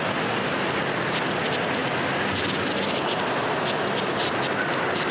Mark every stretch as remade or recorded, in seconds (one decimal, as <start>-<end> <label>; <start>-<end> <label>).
0.0-5.1 recorded